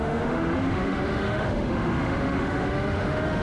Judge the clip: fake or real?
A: fake